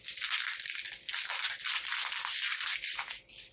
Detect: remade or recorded recorded